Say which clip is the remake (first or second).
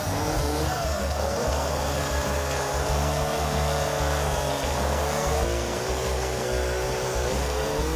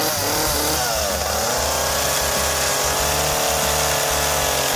first